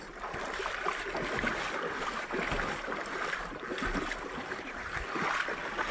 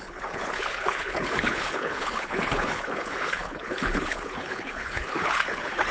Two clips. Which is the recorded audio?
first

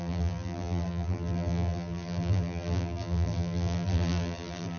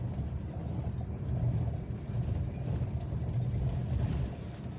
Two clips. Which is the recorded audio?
second